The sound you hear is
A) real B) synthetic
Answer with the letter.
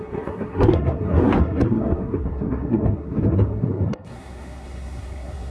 B